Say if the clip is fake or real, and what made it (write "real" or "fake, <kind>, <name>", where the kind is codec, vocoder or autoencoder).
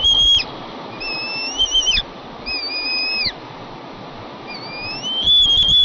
real